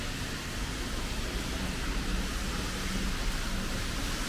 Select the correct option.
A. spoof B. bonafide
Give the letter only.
B